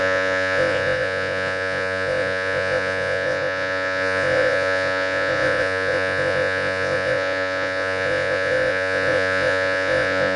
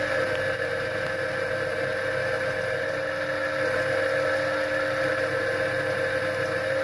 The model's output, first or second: first